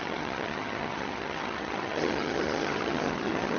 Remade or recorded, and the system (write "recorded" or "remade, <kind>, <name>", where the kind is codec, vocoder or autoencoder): remade, vocoder, HiFi-GAN